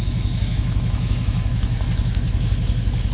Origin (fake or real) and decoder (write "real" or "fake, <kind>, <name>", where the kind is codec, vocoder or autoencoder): fake, autoencoder, DAC-VAE